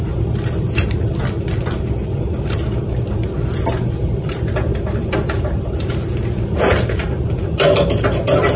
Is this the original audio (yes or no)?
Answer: no